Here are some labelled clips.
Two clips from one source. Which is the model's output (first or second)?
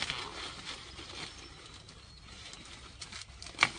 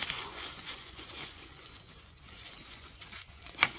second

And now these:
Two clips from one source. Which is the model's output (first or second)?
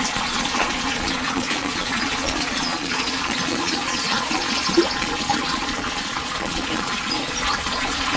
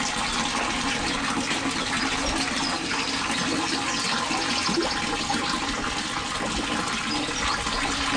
first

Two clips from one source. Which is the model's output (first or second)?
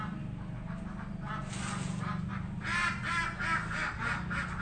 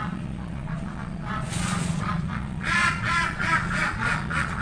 second